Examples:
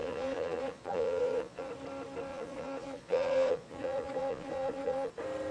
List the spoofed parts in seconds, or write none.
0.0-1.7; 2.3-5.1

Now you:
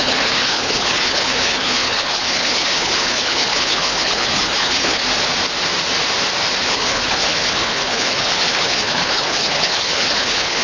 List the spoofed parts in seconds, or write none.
0.0-5.0; 6.6-10.6